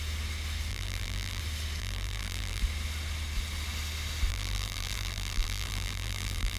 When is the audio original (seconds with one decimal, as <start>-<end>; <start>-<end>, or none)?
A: 0.0-0.7; 1.4-1.8; 2.6-4.3